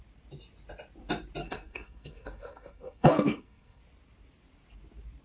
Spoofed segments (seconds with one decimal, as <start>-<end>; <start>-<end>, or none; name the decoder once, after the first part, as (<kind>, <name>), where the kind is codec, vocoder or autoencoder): 1.4-3.8 (codec, SNAC)